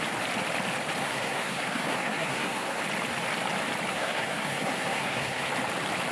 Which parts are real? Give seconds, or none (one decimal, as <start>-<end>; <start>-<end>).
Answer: 0.0-1.0; 2.8-3.9; 5.5-6.1